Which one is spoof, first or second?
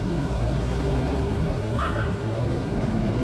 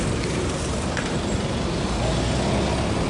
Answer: first